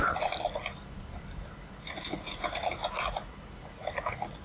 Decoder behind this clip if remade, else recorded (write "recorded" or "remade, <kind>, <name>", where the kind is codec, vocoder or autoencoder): recorded